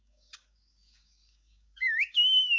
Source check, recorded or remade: remade